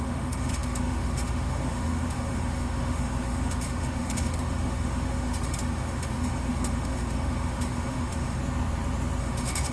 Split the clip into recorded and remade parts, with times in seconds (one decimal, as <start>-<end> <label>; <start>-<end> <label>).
0.0-8.4 remade; 8.4-9.2 recorded; 9.2-9.7 remade